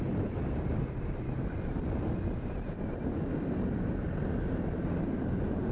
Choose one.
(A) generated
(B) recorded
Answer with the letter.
B